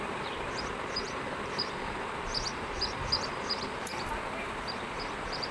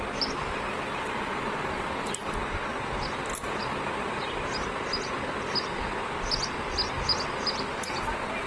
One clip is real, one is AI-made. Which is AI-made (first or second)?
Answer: first